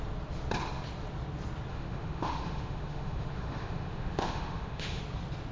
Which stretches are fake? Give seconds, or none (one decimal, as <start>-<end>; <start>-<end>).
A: 1.7-5.0